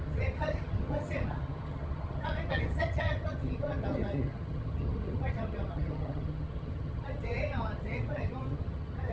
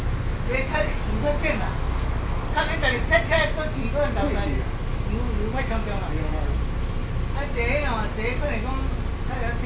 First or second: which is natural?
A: second